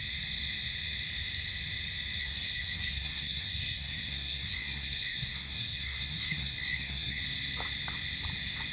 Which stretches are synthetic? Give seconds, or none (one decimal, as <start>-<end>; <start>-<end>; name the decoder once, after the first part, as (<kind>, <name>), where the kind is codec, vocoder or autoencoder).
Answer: 2.2-7.2 (codec, SNAC)